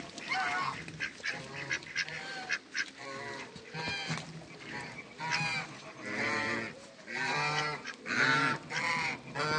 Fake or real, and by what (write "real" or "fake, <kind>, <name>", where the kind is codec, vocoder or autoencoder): real